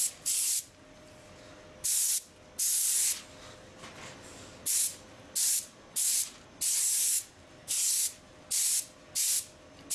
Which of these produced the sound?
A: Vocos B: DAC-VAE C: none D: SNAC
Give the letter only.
C